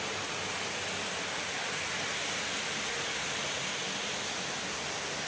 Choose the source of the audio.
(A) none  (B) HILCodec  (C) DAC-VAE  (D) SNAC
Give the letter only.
A